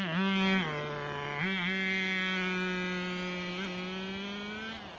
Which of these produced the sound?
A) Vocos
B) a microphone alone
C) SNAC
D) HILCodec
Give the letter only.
B